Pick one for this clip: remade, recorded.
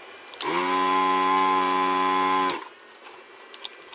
recorded